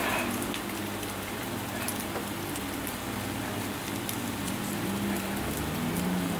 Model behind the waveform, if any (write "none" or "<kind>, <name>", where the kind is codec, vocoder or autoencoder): none